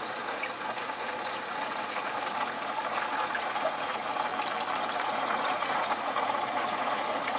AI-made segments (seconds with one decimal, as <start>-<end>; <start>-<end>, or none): 0.0-4.3; 4.9-7.4